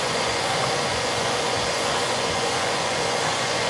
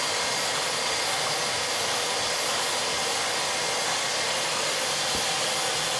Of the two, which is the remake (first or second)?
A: first